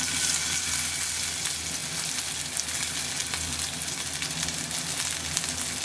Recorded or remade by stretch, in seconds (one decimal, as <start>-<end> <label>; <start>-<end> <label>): 0.0-5.8 recorded